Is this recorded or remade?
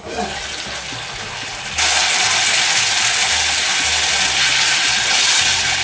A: recorded